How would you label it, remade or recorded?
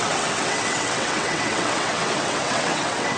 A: remade